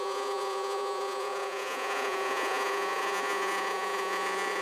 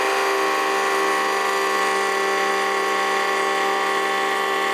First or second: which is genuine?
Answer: second